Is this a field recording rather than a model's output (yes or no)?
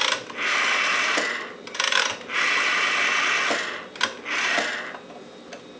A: yes